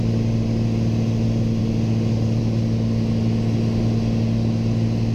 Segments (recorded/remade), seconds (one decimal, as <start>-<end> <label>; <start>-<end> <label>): 0.0-5.1 recorded